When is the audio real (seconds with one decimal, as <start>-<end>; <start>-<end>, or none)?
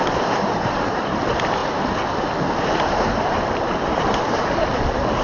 none